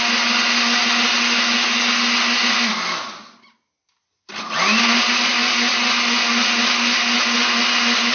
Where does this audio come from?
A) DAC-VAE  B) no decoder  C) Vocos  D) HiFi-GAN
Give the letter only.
B